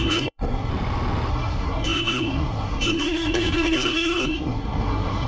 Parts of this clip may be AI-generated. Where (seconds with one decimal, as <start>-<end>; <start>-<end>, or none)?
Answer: 0.0-0.7; 1.3-5.3

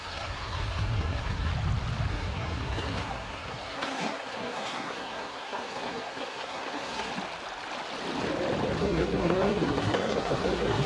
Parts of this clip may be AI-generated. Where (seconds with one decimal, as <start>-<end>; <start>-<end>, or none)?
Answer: 0.0-1.5; 2.1-7.1; 8.8-10.9

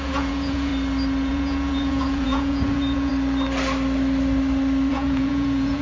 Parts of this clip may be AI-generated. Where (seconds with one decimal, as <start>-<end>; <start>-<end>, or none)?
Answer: 0.0-0.7; 1.3-3.1; 4.9-5.8

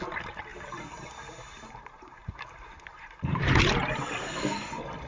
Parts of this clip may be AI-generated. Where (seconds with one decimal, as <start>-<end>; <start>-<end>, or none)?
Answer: 0.5-3.6

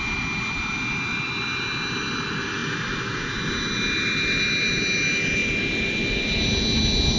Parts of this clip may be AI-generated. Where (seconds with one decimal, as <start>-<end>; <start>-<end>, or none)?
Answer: none

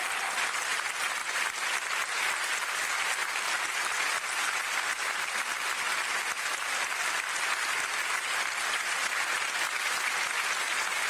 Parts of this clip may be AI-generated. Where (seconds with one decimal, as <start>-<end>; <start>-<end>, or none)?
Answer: none

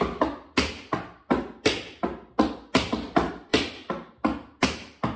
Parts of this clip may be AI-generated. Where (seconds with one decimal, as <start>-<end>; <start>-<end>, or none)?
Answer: none